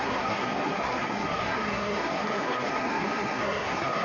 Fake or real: fake